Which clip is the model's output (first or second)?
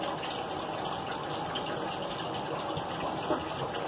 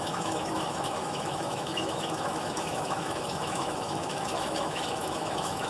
second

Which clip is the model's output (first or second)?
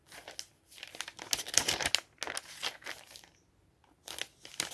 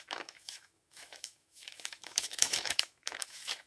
second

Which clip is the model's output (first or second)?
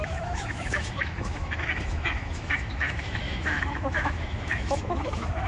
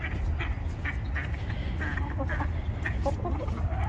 first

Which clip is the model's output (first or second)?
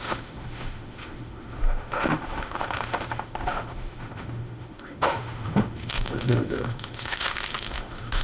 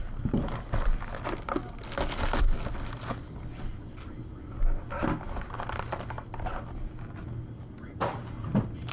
first